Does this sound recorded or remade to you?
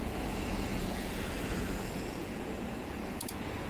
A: remade